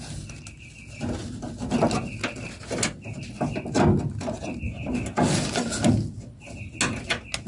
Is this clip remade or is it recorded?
recorded